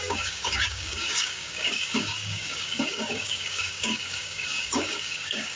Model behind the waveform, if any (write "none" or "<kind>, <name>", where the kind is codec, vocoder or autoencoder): codec, DAC